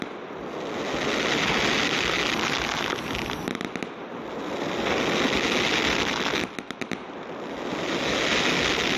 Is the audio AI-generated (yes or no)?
no